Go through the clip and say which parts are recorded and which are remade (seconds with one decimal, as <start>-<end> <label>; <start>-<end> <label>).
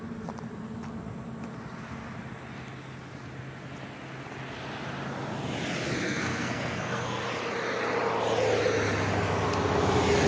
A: 0.0-6.0 recorded; 6.0-7.2 remade; 7.2-10.3 recorded